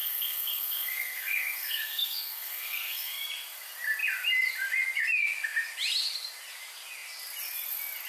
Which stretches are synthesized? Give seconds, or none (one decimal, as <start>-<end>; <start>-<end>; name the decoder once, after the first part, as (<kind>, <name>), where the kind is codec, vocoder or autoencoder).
0.0-3.2 (codec, SNAC)